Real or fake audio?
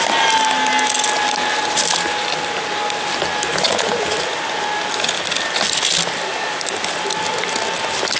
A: real